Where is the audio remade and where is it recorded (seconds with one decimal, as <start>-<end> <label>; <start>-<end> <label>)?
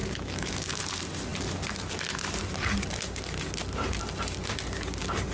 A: 0.0-0.8 remade; 0.8-5.3 recorded